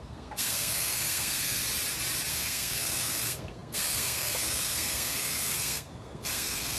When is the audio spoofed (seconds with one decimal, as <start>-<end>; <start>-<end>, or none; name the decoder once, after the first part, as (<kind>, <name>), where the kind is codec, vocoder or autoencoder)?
0.0-1.6 (codec, SNAC); 2.3-6.8